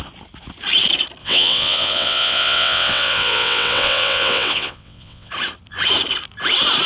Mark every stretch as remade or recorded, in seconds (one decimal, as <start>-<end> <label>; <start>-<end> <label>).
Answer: 0.0-1.2 recorded; 1.2-5.3 remade; 5.3-6.9 recorded